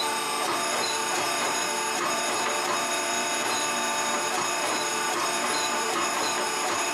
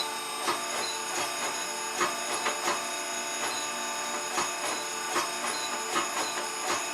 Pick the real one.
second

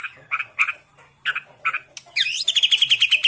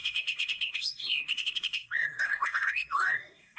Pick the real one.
first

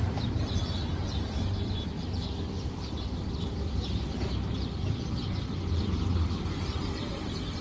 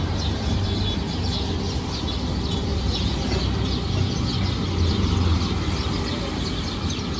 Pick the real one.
second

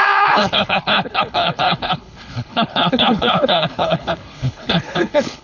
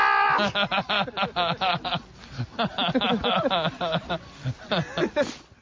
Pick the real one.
second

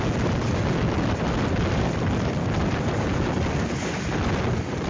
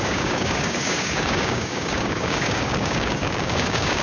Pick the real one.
first